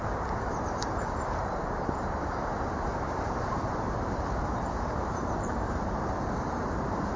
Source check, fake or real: fake